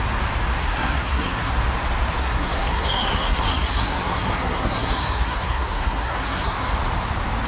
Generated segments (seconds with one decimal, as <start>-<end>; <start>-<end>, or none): 0.6-1.5; 2.2-6.7